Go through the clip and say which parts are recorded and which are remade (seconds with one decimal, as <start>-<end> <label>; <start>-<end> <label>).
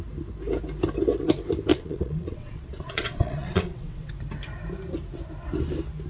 0.0-1.7 recorded; 1.7-4.1 remade; 4.1-6.1 recorded